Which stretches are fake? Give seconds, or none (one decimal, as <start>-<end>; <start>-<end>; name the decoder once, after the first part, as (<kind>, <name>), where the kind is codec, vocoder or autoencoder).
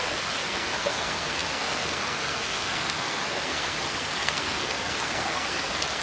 0.0-6.0 (codec, SNAC)